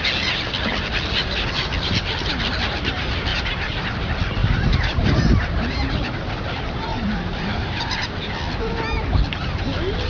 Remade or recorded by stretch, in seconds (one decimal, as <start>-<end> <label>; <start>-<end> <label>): 0.0-3.3 recorded; 3.3-3.9 remade; 3.9-4.4 recorded; 4.4-6.3 remade; 6.3-6.9 recorded; 6.9-8.3 remade; 8.3-10.1 recorded